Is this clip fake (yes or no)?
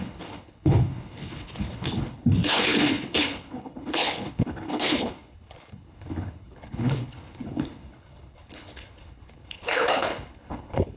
yes